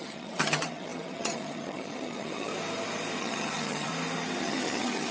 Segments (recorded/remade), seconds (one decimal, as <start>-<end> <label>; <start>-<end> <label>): 0.0-2.5 remade; 2.5-3.2 recorded; 3.2-3.9 remade; 3.9-4.4 recorded; 4.4-5.1 remade